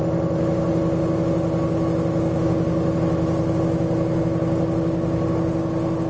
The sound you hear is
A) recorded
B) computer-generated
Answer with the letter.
A